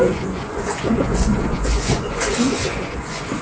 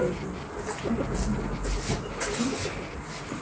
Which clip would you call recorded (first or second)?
second